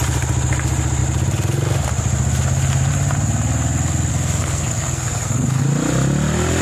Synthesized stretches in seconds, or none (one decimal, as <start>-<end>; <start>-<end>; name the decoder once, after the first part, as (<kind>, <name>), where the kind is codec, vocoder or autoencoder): 4.1-5.6 (codec, SNAC)